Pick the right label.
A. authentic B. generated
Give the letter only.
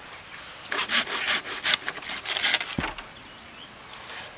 A